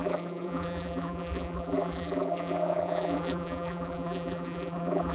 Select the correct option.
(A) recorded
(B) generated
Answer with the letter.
B